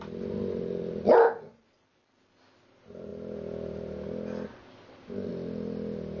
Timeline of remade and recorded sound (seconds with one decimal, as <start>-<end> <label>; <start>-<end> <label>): 0.0-6.2 recorded